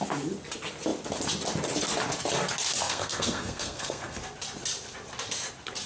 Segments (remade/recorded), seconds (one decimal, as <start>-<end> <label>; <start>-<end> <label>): 0.0-2.8 recorded; 2.8-4.2 remade; 4.2-5.9 recorded